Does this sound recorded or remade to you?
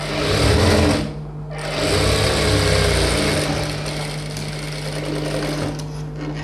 recorded